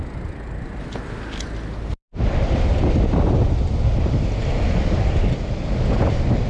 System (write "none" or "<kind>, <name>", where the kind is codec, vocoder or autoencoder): none